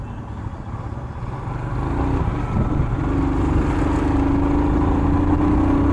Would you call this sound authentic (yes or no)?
yes